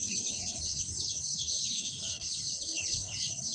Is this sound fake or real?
fake